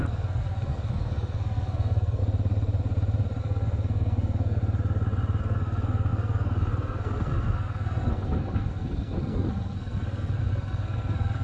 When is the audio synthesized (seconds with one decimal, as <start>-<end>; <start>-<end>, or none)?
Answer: 0.0-2.2; 3.4-4.6; 5.4-11.4